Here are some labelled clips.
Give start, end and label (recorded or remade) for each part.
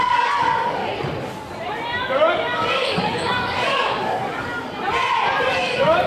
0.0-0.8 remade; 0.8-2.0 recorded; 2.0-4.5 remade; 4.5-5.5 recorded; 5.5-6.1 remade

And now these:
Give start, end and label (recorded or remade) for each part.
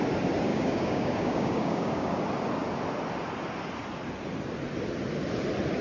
0.0-0.5 recorded; 0.5-2.2 remade; 2.2-5.8 recorded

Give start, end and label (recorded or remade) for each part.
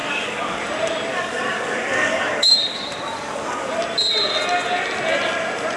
0.0-0.6 remade; 0.6-1.1 recorded; 1.1-3.7 remade; 3.7-5.8 recorded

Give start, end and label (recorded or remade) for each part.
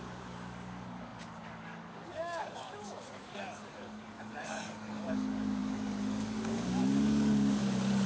0.0-8.1 remade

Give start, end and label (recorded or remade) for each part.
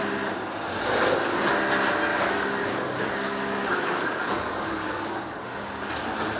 0.0-2.1 recorded; 2.1-5.9 remade; 5.9-6.4 recorded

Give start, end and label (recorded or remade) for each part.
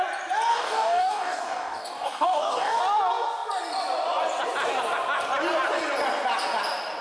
0.0-0.5 recorded; 0.5-2.8 remade; 2.8-7.0 recorded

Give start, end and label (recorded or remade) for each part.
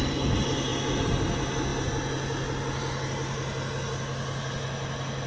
0.0-5.3 recorded